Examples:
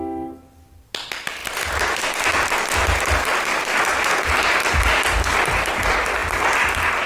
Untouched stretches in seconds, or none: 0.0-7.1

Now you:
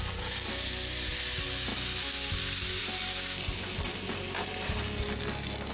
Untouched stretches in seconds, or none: 0.0-3.9; 5.2-5.7

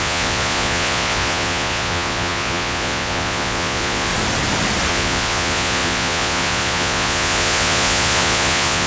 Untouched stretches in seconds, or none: 4.1-4.9

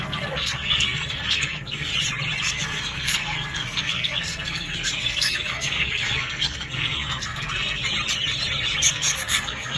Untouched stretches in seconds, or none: 1.9-2.4; 7.8-8.9

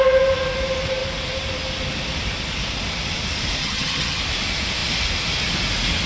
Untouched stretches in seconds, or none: 0.0-3.6; 4.2-6.1

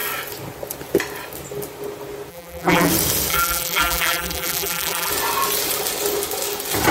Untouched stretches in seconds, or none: 0.0-2.3; 2.9-3.3; 5.1-6.9

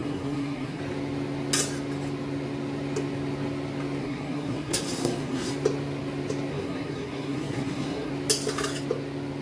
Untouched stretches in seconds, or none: 0.8-4.0; 5.5-6.5; 8.1-9.4

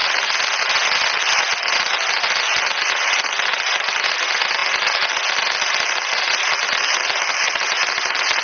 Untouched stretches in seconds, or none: 0.0-8.4